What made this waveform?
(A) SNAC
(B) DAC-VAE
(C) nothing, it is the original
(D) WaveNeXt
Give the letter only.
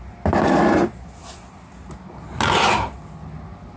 C